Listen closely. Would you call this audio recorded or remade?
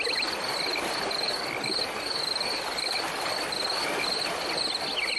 recorded